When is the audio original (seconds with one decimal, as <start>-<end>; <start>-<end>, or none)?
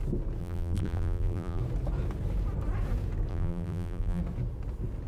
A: 0.0-0.4; 1.6-3.3; 4.2-5.1